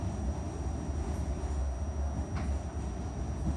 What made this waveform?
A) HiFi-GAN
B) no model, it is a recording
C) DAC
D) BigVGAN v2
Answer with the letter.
B